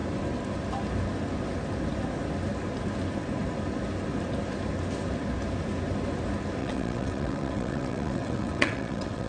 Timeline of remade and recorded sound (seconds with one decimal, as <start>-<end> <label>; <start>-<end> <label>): 0.0-6.6 recorded; 6.6-9.3 remade